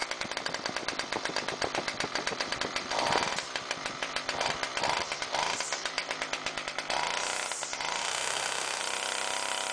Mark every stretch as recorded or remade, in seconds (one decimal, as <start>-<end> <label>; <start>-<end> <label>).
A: 0.0-8.0 recorded; 8.0-8.8 remade; 8.8-9.7 recorded